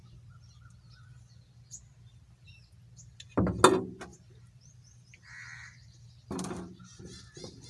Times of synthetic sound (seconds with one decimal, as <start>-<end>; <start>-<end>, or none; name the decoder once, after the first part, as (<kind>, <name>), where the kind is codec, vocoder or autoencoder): 4.1-7.0 (vocoder, BigVGAN v2)